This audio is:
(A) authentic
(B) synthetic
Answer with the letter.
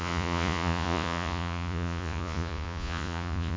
B